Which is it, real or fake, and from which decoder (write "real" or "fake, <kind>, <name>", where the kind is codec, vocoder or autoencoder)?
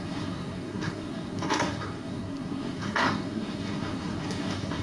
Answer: fake, codec, SNAC